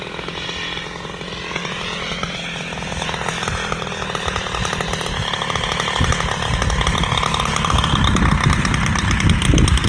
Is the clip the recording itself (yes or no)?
yes